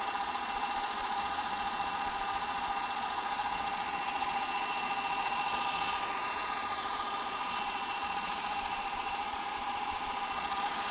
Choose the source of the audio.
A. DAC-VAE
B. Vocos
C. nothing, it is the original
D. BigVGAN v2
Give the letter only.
B